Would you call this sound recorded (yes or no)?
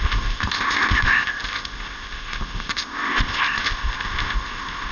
no